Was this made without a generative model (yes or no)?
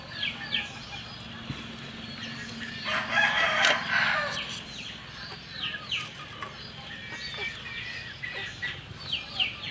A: yes